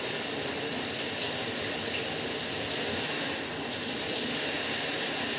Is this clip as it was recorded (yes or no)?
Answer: yes